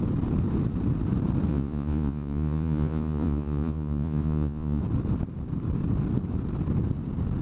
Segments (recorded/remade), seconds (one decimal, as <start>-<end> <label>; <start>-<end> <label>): 0.0-1.5 recorded; 1.5-4.8 remade; 4.8-7.4 recorded